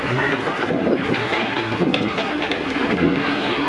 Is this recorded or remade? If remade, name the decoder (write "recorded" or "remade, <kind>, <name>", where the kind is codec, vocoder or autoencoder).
remade, codec, SNAC